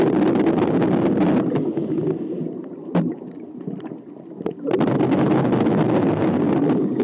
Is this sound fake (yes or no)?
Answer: no